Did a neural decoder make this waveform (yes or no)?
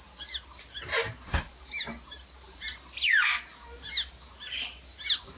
no